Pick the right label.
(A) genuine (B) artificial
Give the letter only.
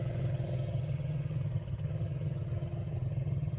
B